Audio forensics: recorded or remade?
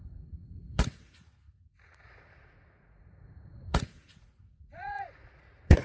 remade